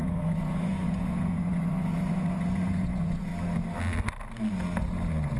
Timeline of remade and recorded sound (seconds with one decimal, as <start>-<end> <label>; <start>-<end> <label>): 0.0-3.3 remade; 3.3-5.4 recorded